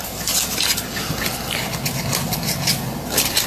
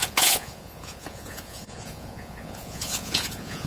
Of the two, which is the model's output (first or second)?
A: second